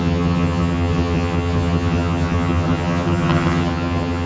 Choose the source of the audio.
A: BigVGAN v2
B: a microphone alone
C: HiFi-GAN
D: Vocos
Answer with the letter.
C